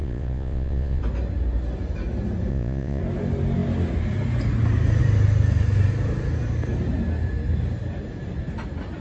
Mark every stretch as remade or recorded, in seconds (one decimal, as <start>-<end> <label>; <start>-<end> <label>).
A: 0.0-1.0 remade; 1.0-2.5 recorded; 2.5-3.0 remade; 3.0-9.0 recorded